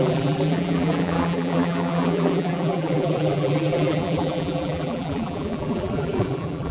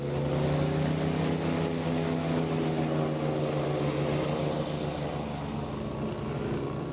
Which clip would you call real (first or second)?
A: second